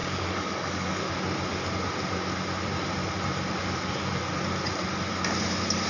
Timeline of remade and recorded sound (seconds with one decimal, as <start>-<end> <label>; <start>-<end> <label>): 0.0-1.1 remade; 1.1-5.9 recorded